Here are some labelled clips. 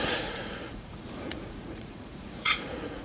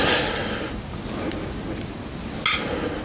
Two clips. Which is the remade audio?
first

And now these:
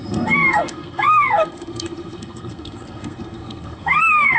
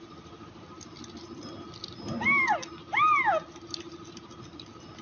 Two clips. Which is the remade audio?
first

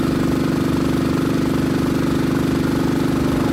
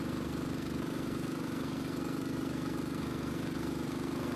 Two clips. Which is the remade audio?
second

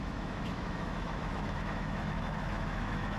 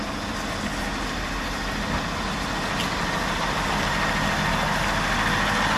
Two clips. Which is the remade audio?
first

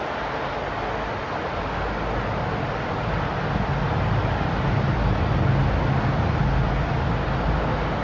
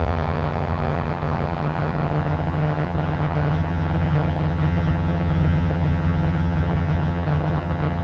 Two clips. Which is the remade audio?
second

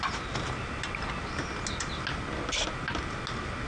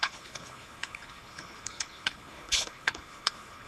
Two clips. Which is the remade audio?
second